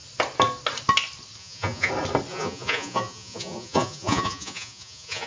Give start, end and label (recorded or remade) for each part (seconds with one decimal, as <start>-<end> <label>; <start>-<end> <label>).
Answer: 0.0-1.4 recorded; 1.4-1.9 remade; 1.9-2.3 recorded; 2.3-5.3 remade